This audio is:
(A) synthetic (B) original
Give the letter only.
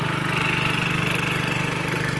B